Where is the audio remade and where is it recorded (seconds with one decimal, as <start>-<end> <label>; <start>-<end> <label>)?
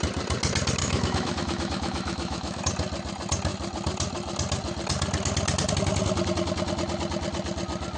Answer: 0.0-0.8 recorded; 0.8-2.6 remade; 2.6-8.0 recorded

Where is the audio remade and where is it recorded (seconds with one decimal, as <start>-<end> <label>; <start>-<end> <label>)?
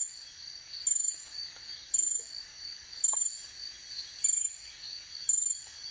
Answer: 0.0-3.2 remade; 3.2-4.4 recorded; 4.4-5.9 remade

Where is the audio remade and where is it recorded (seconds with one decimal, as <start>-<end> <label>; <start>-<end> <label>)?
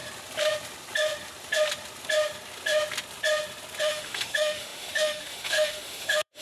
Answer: 0.0-3.8 recorded; 3.8-6.4 remade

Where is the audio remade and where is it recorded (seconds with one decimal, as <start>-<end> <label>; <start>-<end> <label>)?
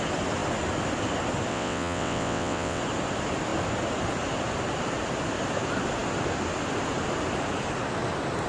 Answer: 0.0-1.5 recorded; 1.5-2.8 remade; 2.8-8.5 recorded